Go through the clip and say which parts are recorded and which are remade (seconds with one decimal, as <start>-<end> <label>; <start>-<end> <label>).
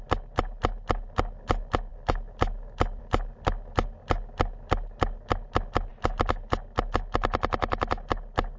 0.0-8.6 recorded